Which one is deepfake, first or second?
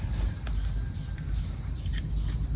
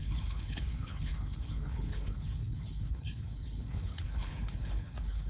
second